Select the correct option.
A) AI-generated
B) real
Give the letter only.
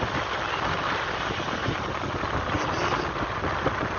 B